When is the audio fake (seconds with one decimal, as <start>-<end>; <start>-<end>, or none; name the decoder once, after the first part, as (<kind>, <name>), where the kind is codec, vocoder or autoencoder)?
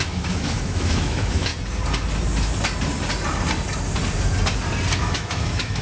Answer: 0.0-1.5 (autoencoder, DAC-VAE); 5.0-5.8